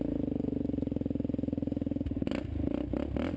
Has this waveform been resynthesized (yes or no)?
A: no